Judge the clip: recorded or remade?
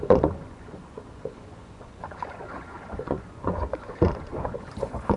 remade